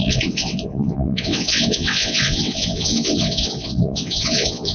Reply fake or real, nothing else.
fake